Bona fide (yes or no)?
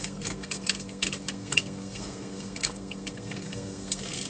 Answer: no